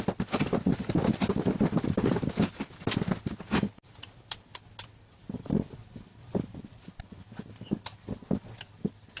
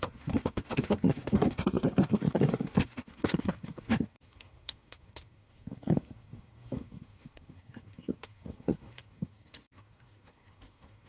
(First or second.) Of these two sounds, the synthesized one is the second